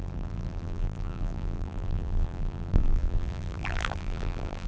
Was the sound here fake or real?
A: fake